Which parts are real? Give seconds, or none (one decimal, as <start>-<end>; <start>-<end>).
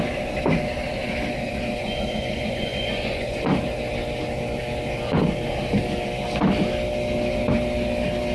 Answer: 0.0-1.8; 3.4-8.3